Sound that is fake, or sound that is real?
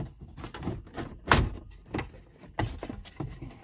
real